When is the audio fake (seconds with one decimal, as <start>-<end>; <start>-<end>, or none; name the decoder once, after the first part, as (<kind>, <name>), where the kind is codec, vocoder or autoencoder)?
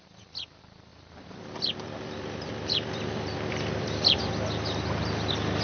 0.9-4.3 (vocoder, BigVGAN v2)